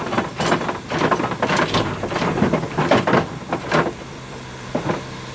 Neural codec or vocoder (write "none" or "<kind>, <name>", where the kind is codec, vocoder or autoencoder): vocoder, BigVGAN v2